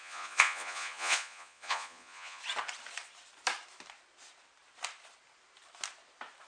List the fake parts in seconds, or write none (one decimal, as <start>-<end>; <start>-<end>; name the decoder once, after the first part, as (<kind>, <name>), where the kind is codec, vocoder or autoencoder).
0.0-2.4 (vocoder, Vocos)